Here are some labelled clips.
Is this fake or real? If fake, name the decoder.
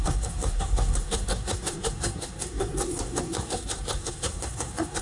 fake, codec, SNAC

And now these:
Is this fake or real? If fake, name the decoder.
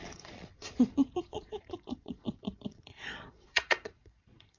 fake, vocoder, Vocos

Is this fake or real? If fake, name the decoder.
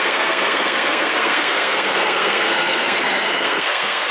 fake, codec, SNAC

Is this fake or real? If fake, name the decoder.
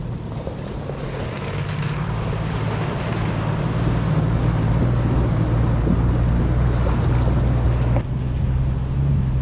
real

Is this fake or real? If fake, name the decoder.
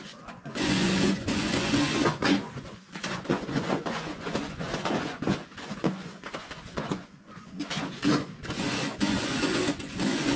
fake, vocoder, Vocos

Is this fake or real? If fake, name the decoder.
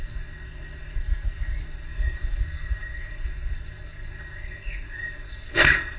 fake, codec, SNAC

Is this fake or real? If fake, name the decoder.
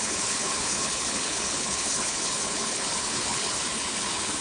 fake, codec, HILCodec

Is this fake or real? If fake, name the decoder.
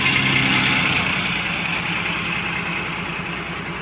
real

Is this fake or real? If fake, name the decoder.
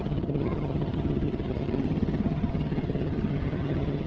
fake, vocoder, HiFi-GAN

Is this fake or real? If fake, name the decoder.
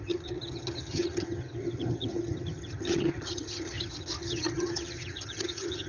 fake, vocoder, HiFi-GAN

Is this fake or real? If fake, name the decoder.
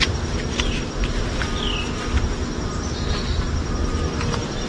real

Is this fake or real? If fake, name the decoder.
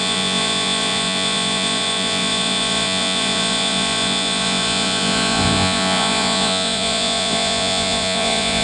fake, vocoder, Vocos